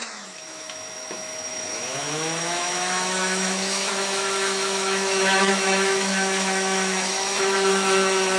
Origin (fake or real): fake